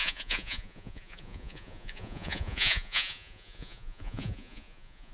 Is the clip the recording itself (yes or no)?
no